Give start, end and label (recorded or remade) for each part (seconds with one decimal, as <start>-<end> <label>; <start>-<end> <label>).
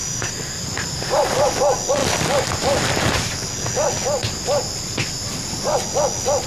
0.0-1.5 remade; 1.5-6.5 recorded